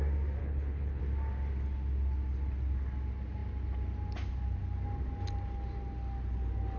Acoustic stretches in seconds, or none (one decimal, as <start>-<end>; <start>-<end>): 0.0-0.4; 1.0-6.8